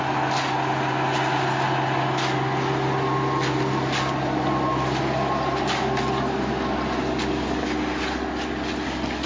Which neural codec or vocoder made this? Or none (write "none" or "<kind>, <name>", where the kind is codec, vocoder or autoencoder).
none